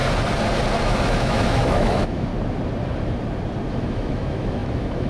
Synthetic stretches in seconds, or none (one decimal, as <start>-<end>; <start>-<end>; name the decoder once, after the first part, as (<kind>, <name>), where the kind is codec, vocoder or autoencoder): 0.8-2.3 (autoencoder, DAC-VAE); 3.7-5.1